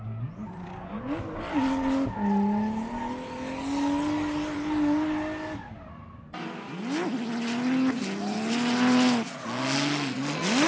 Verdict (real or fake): real